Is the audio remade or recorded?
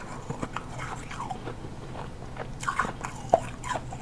recorded